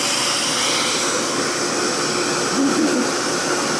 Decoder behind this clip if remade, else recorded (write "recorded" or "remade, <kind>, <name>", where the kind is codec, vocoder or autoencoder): recorded